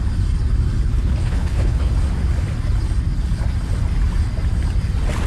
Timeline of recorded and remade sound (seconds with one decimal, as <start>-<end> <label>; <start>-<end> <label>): 0.0-0.9 recorded; 0.9-1.9 remade; 1.9-5.3 recorded